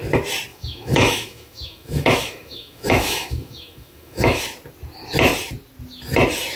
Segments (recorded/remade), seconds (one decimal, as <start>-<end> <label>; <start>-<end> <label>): 0.0-0.5 recorded; 0.5-4.4 remade; 4.4-6.6 recorded

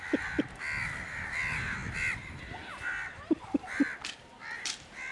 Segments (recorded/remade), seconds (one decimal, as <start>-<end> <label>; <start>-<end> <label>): 0.0-5.1 remade

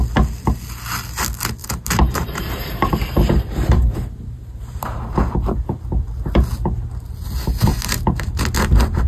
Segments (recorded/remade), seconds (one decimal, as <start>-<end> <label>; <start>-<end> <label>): 0.0-1.6 recorded; 1.6-5.3 remade; 5.3-7.7 recorded; 7.7-8.4 remade; 8.4-9.1 recorded